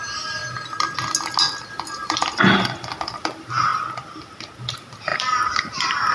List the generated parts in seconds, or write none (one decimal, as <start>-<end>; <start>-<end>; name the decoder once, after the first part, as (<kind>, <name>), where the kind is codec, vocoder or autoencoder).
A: 0.0-0.4 (vocoder, BigVGAN v2); 1.6-3.7; 4.6-6.1